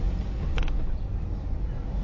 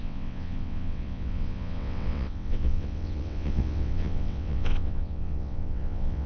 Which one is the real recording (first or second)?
first